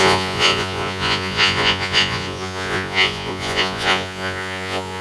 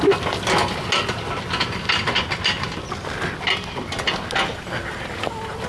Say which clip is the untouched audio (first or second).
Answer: second